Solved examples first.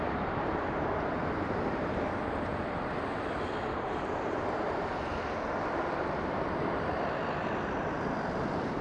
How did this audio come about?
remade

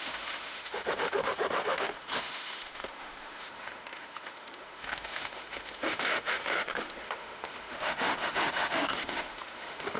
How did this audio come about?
remade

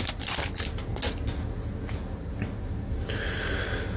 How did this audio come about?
recorded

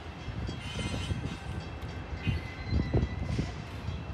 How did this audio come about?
recorded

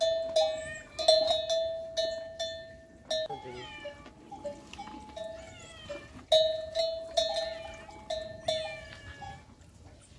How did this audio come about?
recorded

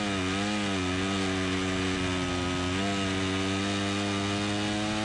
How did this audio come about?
recorded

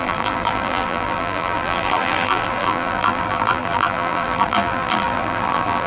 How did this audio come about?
remade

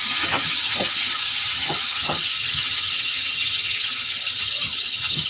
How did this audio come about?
remade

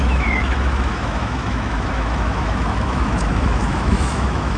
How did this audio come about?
remade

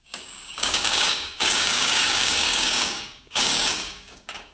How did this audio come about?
remade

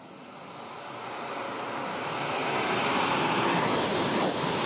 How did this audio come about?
recorded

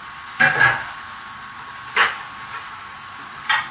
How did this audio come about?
recorded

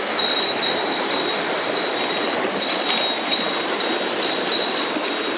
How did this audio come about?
recorded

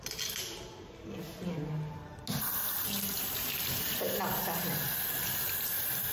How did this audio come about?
recorded